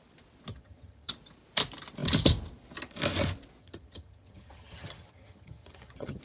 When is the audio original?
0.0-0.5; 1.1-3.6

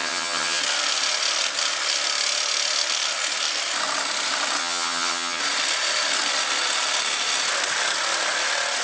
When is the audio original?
0.6-4.6; 5.4-8.8

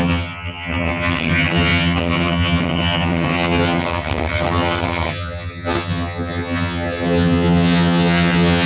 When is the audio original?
none

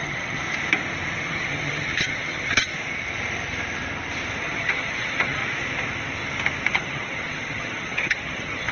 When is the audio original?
0.4-1.3; 2.7-4.4; 5.4-6.7

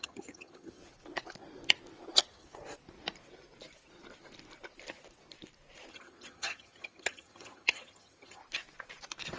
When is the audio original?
0.8-5.9; 8.4-9.4

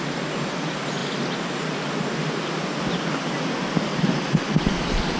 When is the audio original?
0.0-5.2

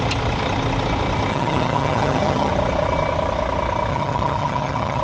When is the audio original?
0.0-1.3; 2.5-3.9

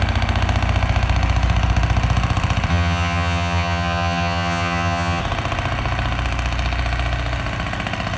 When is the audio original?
0.0-2.7; 5.2-8.2